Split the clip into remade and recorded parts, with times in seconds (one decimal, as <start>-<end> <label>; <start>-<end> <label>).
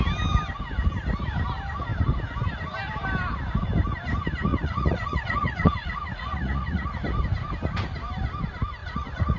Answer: 0.0-4.5 recorded; 4.5-6.9 remade; 6.9-8.8 recorded; 8.8-9.4 remade